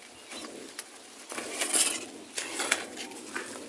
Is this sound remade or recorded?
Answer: recorded